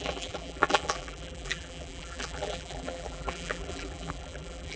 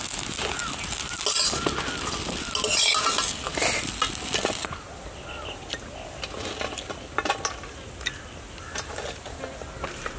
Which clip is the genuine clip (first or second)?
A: second